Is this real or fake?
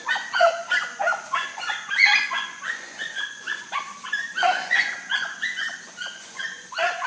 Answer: fake